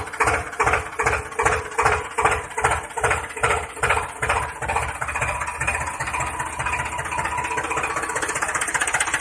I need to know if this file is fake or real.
fake